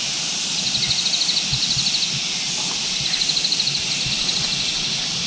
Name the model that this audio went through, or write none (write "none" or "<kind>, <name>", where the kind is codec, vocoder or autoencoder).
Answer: none